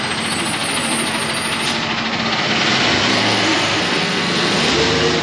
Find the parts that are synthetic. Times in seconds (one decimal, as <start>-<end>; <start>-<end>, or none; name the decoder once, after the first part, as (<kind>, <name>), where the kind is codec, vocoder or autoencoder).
3.1-4.7 (codec, SNAC)